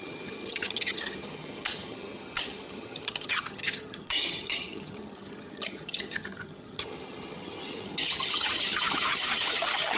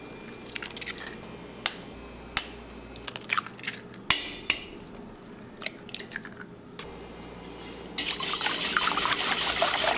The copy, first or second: first